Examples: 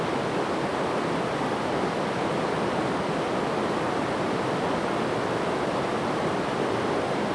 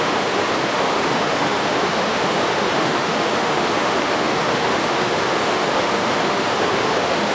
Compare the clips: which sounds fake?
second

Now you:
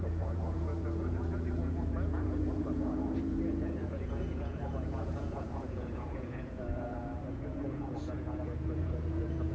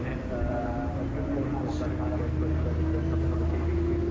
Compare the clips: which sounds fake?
first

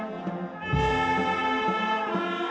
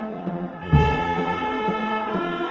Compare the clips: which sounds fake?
second